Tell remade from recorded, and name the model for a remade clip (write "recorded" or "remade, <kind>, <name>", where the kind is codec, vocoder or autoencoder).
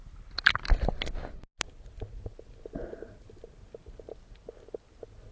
recorded